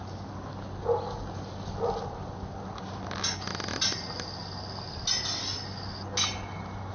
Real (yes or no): yes